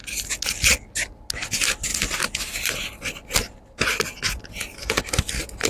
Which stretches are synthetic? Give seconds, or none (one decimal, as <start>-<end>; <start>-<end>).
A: none